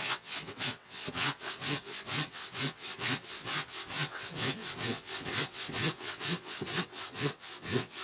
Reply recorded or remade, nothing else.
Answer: remade